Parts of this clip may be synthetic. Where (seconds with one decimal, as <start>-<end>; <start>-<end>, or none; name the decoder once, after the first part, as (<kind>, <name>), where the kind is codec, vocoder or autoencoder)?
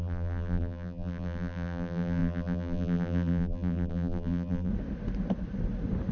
0.0-4.7 (vocoder, BigVGAN v2)